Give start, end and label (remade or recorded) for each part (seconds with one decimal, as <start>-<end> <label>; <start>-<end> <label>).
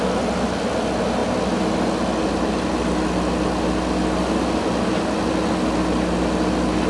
0.0-6.9 recorded